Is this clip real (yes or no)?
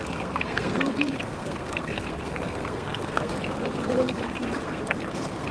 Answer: no